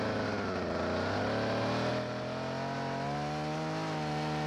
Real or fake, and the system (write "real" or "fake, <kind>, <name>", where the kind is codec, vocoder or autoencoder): real